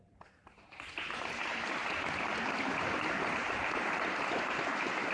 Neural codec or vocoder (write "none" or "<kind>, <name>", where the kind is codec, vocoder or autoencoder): vocoder, BigVGAN v2